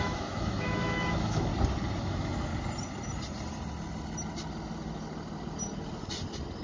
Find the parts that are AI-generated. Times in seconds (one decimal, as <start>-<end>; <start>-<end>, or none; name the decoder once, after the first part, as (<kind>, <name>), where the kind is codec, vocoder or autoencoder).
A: 0.0-1.5 (autoencoder, DAC-VAE); 2.0-2.5